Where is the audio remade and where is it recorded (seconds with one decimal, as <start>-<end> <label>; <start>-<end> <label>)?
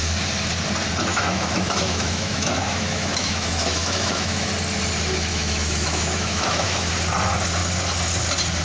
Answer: 0.0-1.1 recorded; 1.1-4.5 remade; 4.5-5.3 recorded; 5.3-6.9 remade; 6.9-8.6 recorded